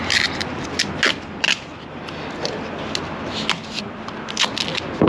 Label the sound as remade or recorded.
recorded